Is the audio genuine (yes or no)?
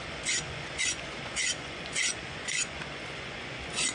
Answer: no